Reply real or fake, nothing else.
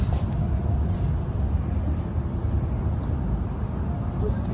real